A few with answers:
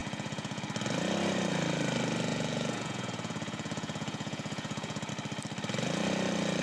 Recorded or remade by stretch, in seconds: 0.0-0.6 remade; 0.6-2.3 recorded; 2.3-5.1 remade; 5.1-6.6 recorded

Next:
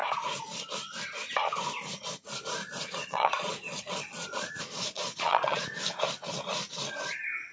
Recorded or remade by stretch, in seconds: 0.0-2.6 recorded; 2.6-5.6 remade; 5.6-7.5 recorded

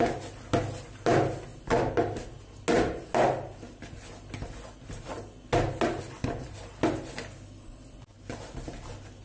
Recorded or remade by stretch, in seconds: 0.0-9.2 recorded

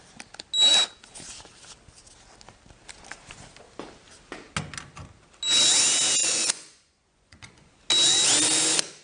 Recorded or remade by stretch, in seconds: 0.0-6.2 recorded; 6.2-7.8 remade; 7.8-9.0 recorded

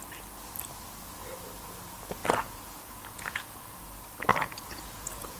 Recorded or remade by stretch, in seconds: 0.0-2.2 recorded; 2.2-3.6 remade; 3.6-4.3 recorded; 4.3-5.4 remade

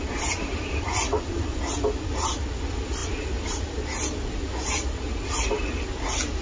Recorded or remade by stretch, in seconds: 0.0-6.4 recorded